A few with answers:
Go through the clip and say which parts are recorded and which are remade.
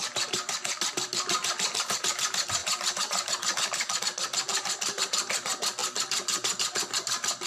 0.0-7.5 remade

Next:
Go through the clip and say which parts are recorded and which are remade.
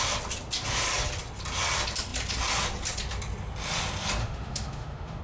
0.0-4.2 recorded; 4.2-5.2 remade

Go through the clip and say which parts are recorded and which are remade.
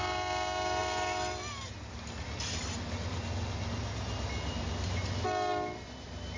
0.0-6.4 recorded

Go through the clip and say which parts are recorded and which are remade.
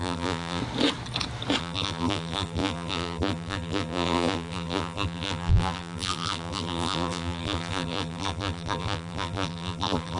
0.0-0.6 remade; 0.6-1.6 recorded; 1.6-10.2 remade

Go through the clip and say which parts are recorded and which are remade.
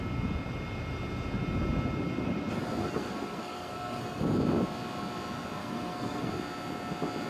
0.0-2.8 recorded; 2.8-4.2 remade; 4.2-5.6 recorded; 5.6-6.3 remade; 6.3-7.3 recorded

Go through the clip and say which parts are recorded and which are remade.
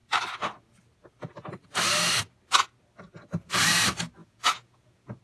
0.0-4.2 recorded; 4.2-5.2 remade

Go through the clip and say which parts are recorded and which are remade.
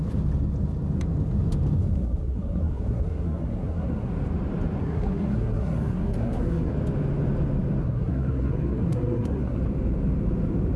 0.0-1.8 recorded; 1.8-4.1 remade; 4.1-4.8 recorded; 4.8-6.7 remade; 6.7-7.8 recorded; 7.8-9.6 remade; 9.6-10.8 recorded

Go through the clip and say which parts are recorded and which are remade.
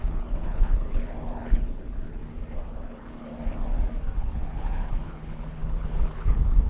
0.0-2.2 remade; 2.2-2.8 recorded; 2.8-3.3 remade; 3.3-4.2 recorded; 4.2-6.7 remade